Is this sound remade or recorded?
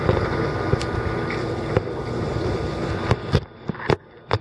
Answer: recorded